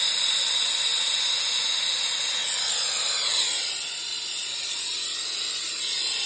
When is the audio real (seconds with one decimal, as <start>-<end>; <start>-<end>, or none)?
0.0-6.3